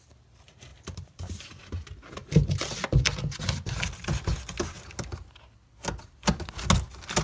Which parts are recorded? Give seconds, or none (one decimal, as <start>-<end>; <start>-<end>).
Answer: 0.0-0.7; 1.5-7.2